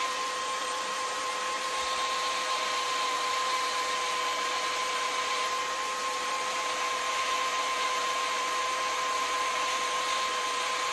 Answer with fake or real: fake